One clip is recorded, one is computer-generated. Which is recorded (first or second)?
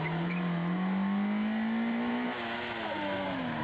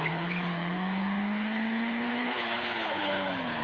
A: first